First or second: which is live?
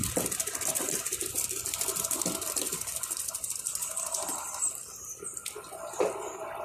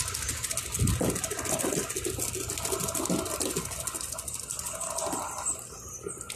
second